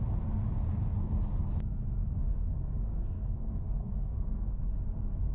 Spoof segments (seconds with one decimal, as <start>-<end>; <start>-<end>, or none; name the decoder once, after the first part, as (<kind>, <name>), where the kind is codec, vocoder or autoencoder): 2.0-4.6 (codec, SNAC)